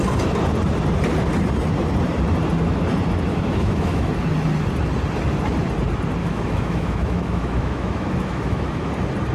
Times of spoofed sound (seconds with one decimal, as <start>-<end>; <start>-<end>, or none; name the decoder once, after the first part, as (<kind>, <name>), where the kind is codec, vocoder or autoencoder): 3.3-4.1 (autoencoder, DAC-VAE); 6.2-8.9